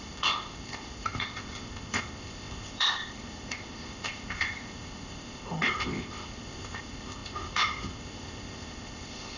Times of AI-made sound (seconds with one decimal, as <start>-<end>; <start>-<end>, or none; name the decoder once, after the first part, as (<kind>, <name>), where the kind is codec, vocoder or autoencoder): 0.0-9.4 (codec, ZipCodec)